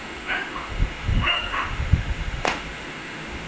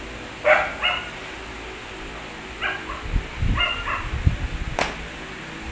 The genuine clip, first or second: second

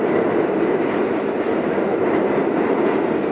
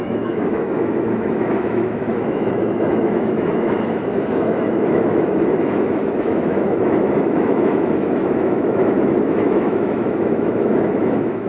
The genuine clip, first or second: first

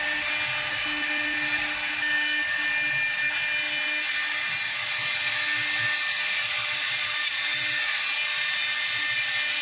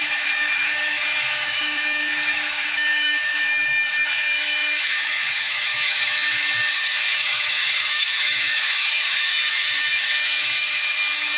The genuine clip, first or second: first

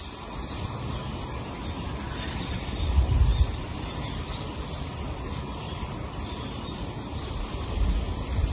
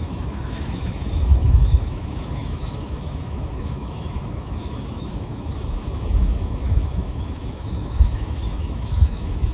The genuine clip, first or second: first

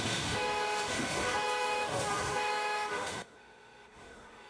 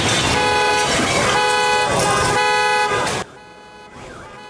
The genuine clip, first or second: second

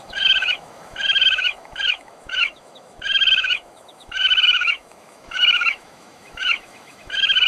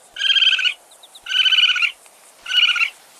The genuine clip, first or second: second